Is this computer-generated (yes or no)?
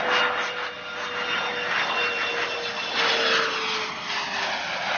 no